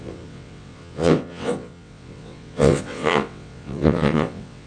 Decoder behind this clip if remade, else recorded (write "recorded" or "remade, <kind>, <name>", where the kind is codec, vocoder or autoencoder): remade, vocoder, WaveNeXt